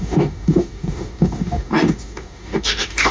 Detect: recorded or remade remade